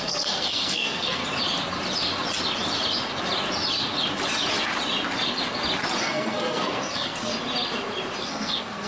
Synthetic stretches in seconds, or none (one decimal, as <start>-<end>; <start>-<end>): 0.0-1.2; 6.0-7.3; 8.2-8.9